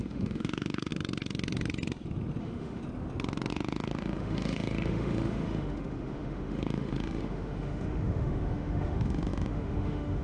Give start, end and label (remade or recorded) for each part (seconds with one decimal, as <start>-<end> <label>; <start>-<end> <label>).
0.0-0.9 remade; 0.9-2.4 recorded; 2.4-2.8 remade; 2.8-3.5 recorded; 3.5-10.2 remade